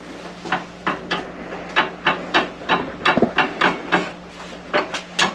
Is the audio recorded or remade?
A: recorded